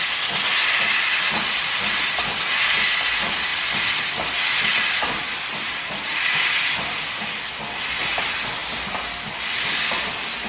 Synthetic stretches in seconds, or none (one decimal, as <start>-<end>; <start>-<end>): none